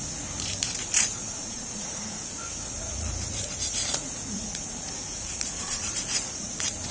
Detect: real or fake fake